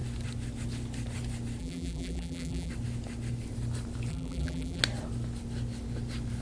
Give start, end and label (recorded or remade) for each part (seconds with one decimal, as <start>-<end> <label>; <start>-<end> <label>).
0.0-1.6 recorded; 1.6-2.7 remade; 2.7-4.1 recorded; 4.1-4.8 remade; 4.8-6.4 recorded